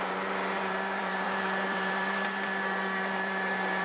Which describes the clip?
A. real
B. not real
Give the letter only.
B